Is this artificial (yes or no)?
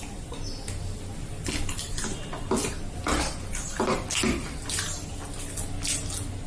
no